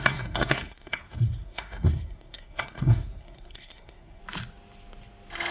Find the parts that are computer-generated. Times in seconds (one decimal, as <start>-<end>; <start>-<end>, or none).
0.0-4.2